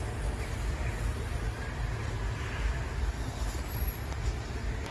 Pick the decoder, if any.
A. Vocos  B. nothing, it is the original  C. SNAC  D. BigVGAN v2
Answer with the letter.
B